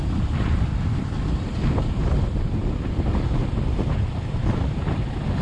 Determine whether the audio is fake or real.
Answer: real